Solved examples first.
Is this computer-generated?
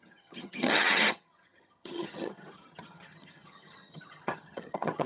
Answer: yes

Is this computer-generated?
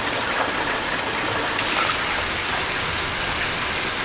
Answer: no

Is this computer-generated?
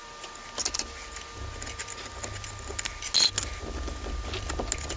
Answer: no